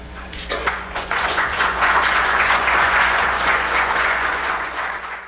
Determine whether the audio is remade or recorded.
remade